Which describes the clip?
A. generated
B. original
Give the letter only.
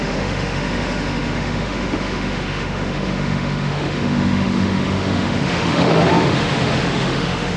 A